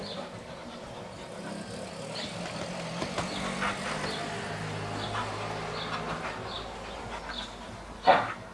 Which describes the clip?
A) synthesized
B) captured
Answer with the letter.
B